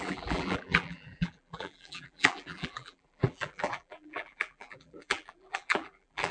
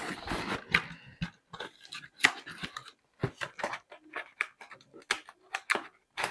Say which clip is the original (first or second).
second